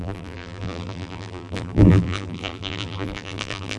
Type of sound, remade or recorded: remade